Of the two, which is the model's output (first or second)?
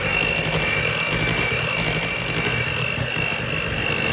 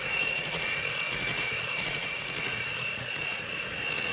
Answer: second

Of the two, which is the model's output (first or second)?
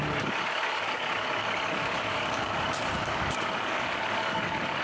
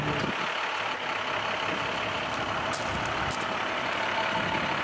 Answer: first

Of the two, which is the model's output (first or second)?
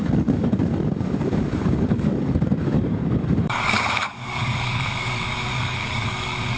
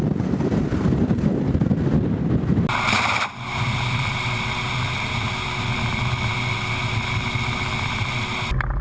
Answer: first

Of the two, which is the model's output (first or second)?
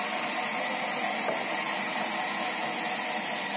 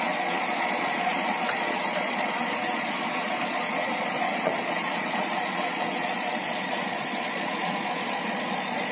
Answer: second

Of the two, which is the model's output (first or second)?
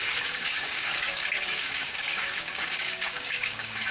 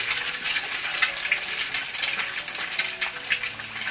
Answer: first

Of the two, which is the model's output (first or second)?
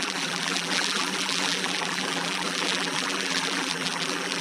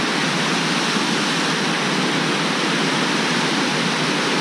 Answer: first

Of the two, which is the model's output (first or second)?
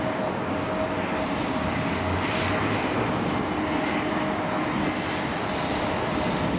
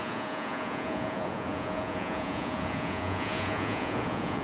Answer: second